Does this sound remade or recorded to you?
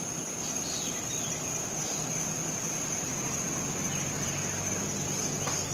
remade